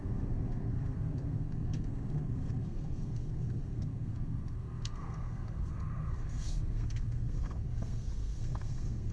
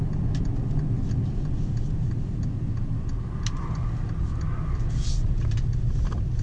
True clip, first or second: second